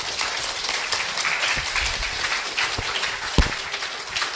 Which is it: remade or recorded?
remade